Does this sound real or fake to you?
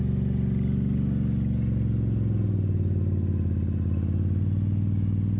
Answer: real